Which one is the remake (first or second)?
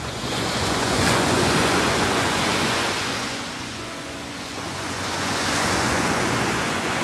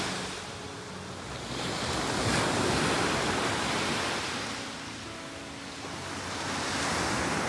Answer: first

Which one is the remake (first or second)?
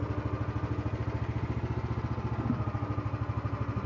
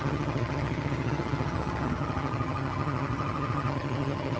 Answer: second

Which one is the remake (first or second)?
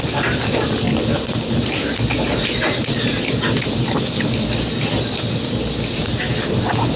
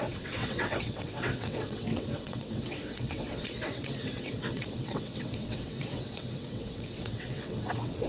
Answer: second